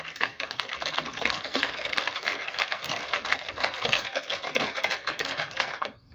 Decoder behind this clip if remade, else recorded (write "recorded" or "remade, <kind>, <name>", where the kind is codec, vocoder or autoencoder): remade, codec, SNAC